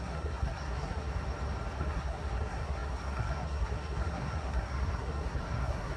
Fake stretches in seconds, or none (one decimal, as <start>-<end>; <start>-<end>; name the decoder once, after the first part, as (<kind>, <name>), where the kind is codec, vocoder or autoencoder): 0.0-1.1 (codec, SNAC); 1.8-6.0